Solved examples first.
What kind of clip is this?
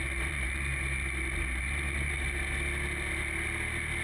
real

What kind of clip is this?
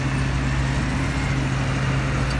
real